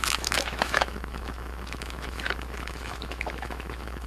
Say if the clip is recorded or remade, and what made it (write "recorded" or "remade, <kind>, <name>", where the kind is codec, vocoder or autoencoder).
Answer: remade, autoencoder, DAC-VAE